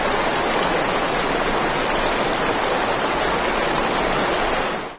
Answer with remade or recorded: recorded